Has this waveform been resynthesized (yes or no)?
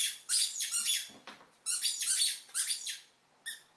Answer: no